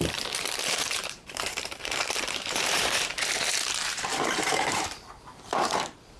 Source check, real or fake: fake